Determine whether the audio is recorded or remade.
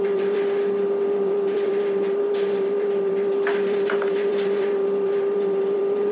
remade